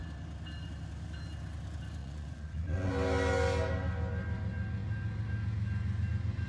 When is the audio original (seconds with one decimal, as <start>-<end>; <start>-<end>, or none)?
0.0-2.0; 2.9-6.5